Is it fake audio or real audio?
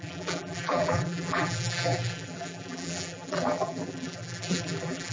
fake